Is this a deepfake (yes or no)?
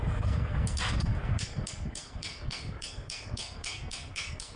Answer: yes